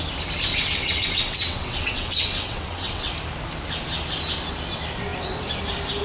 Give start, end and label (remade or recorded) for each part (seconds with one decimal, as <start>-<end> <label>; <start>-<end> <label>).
0.0-0.5 recorded; 0.5-3.1 remade; 3.1-6.0 recorded

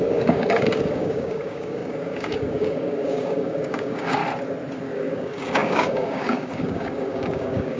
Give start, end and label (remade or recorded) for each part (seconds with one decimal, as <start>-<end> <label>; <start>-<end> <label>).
0.0-4.2 remade; 4.2-4.8 recorded; 4.8-7.8 remade